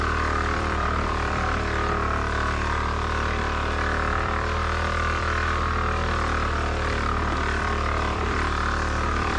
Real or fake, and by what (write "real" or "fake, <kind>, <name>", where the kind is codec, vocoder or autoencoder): fake, vocoder, BigVGAN v2